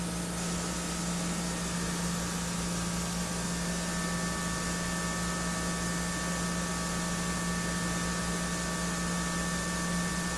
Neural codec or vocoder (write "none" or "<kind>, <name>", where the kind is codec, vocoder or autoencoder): none